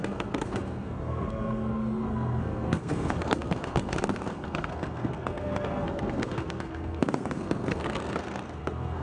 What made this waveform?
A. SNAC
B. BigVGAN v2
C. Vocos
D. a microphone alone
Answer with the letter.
A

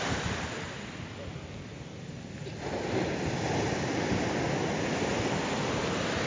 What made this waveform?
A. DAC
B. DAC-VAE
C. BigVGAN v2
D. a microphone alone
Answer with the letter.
D